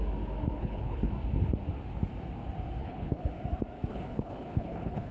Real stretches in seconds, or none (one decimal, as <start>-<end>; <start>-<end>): 0.0-0.6; 1.1-2.8; 3.3-3.9